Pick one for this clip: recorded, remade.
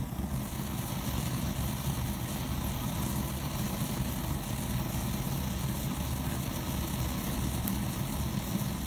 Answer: recorded